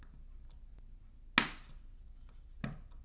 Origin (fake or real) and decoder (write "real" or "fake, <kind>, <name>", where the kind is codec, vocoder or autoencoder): real